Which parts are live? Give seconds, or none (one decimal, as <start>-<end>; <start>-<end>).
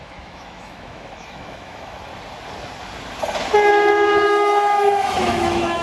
2.1-3.7